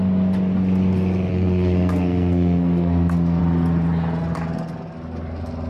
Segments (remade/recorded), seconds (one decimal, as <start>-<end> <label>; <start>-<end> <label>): 0.0-1.3 recorded; 1.3-3.4 remade; 3.4-5.7 recorded